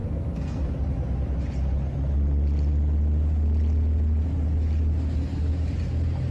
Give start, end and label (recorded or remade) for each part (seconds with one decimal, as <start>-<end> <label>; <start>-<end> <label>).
0.0-0.7 remade; 0.7-6.3 recorded

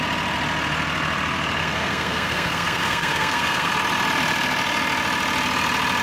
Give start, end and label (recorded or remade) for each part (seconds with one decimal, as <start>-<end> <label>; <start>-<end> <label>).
0.0-1.6 recorded; 1.6-3.7 remade; 3.7-6.0 recorded

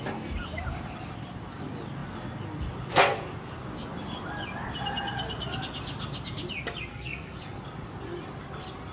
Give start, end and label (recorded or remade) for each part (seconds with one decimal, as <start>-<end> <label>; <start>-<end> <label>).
0.0-6.9 recorded; 6.9-7.4 remade; 7.4-8.9 recorded